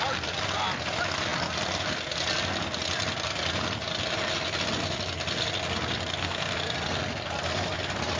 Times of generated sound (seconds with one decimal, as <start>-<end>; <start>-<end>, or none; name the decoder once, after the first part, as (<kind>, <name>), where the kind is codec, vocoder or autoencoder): 6.2-6.7 (codec, SNAC)